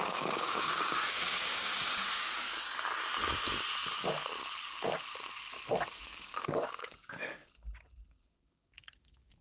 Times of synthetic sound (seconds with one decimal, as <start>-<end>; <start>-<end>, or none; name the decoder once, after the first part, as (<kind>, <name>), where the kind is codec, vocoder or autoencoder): 0.0-1.7 (codec, DAC); 6.0-7.4; 8.1-9.4